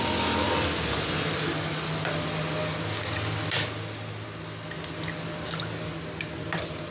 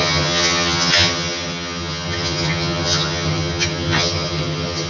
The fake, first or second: second